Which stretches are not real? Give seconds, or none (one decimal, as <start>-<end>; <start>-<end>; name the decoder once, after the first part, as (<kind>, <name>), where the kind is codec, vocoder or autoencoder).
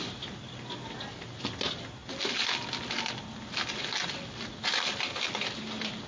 none